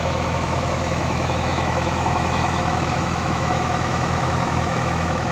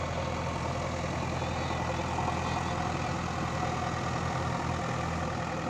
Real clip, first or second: second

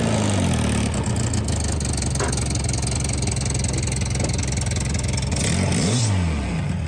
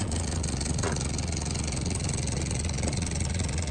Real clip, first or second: first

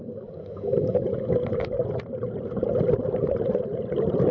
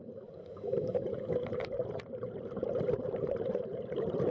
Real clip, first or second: first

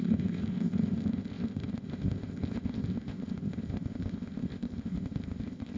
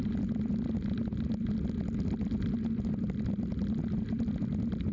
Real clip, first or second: second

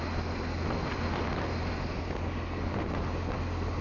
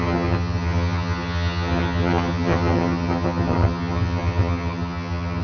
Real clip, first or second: first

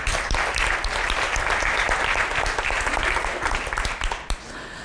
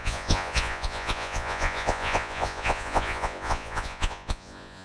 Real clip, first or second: first